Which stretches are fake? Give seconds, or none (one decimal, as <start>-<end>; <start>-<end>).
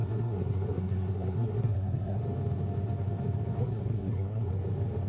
0.0-2.2; 3.6-4.5